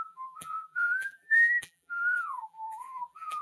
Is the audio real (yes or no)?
no